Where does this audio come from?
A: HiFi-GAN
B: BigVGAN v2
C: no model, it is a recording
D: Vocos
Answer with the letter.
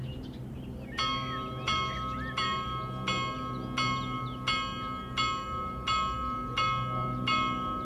C